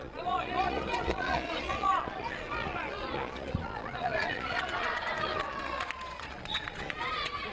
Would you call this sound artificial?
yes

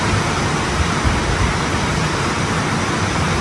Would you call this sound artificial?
no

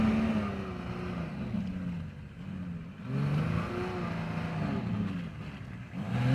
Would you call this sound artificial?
no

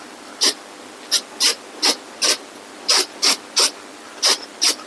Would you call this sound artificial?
no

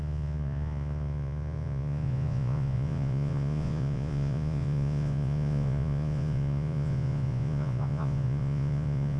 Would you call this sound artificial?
yes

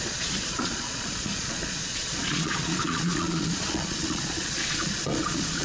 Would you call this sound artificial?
yes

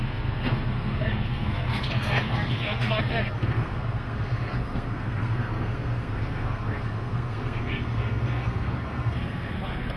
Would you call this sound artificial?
yes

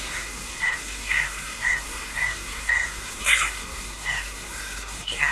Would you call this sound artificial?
yes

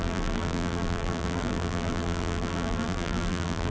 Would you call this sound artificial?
yes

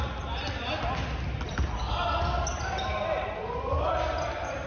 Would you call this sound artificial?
no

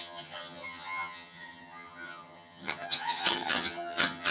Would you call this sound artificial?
yes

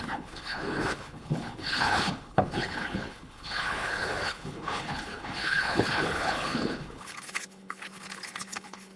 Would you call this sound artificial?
yes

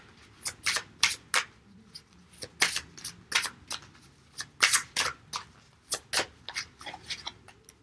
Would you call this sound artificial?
no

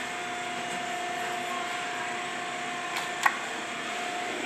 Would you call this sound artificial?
no